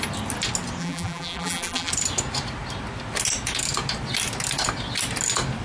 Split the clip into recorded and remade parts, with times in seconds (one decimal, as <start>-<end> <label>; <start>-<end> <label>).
0.0-0.8 recorded; 0.8-1.9 remade; 1.9-5.6 recorded